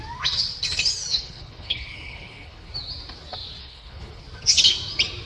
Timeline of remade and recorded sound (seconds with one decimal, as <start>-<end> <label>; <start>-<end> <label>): 0.0-1.1 recorded; 1.1-2.7 remade; 2.7-3.6 recorded; 3.6-4.2 remade; 4.2-5.3 recorded